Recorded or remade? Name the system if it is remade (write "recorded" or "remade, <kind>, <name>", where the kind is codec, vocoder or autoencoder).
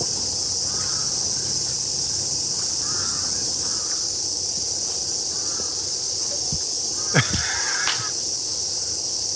recorded